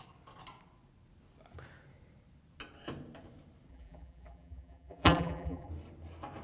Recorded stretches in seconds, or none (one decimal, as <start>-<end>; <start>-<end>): 0.0-3.7; 5.7-6.4